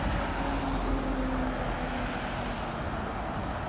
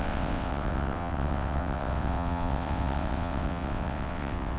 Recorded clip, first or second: first